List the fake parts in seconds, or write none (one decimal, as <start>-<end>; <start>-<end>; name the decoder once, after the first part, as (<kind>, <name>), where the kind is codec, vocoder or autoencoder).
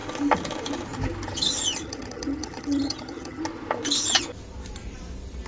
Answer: 1.8-3.4 (vocoder, HiFi-GAN)